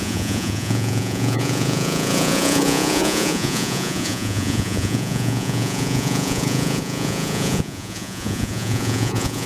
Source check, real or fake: fake